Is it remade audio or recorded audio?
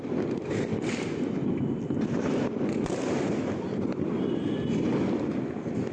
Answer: recorded